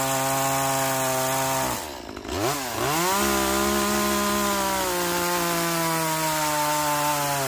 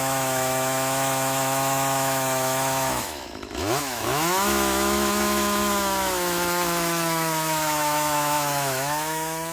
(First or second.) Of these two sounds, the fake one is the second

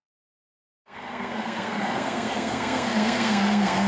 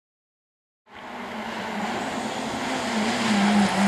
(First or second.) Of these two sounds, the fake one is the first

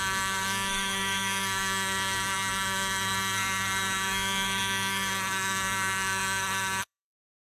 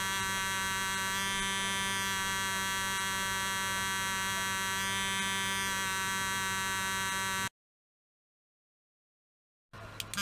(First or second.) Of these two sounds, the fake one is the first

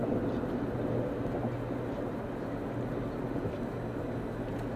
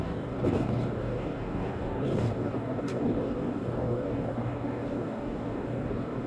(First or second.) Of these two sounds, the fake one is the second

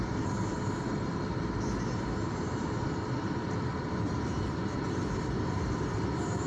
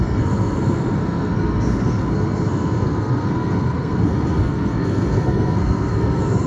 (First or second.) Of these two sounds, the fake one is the second